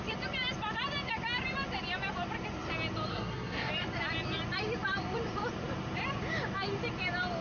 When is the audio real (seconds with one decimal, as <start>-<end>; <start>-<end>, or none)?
0.0-3.1; 3.7-7.4